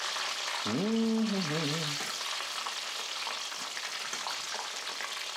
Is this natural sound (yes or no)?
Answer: yes